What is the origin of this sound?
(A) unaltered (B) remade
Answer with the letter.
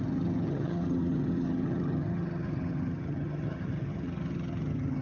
B